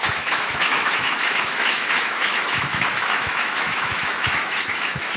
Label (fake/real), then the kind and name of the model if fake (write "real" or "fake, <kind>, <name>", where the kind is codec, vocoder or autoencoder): fake, autoencoder, DAC-VAE